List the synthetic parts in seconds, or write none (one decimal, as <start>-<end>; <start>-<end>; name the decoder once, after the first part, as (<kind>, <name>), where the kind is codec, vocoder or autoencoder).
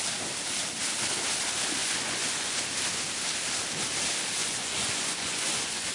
1.8-2.6 (vocoder, Vocos); 4.4-5.9